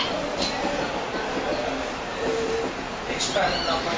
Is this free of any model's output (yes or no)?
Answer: yes